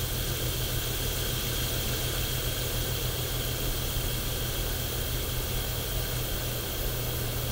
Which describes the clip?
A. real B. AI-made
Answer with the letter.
A